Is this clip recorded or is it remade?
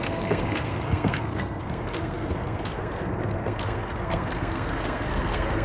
remade